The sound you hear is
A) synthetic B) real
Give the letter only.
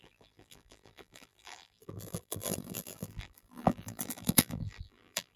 A